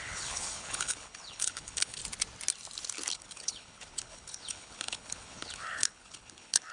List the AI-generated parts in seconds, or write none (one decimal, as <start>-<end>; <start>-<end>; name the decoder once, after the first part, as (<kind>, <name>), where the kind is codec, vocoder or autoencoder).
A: 0.0-2.0 (codec, HILCodec); 3.1-6.7